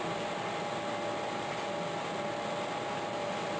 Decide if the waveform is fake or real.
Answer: real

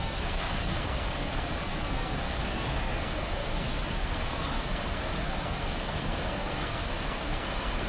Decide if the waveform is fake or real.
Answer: fake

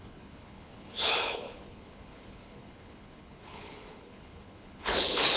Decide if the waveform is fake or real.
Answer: fake